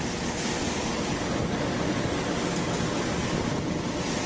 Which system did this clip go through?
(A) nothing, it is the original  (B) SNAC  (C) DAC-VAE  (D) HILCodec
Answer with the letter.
A